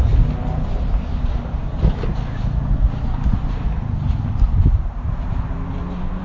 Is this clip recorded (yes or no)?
yes